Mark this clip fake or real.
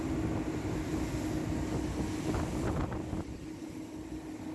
real